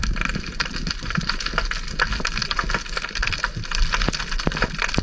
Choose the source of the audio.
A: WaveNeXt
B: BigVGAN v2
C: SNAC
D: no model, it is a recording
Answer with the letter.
D